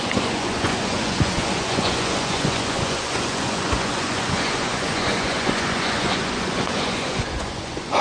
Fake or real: fake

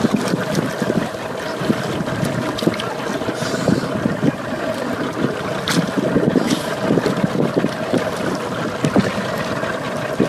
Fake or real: real